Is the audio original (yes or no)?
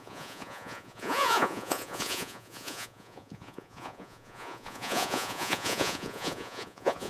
no